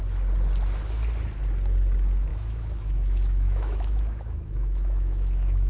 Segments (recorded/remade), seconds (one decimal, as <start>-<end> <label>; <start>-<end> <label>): 0.0-2.3 recorded; 2.3-5.7 remade